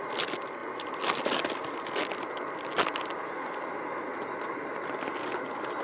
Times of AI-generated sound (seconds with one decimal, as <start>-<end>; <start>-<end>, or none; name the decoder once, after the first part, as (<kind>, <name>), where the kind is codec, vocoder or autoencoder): none